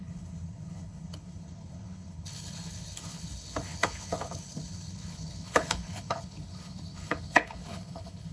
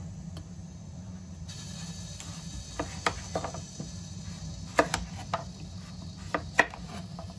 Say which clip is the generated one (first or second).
first